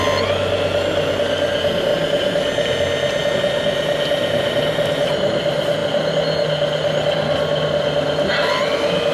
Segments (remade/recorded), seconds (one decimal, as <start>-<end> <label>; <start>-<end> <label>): 0.0-9.1 recorded